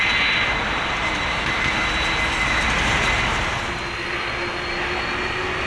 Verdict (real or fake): real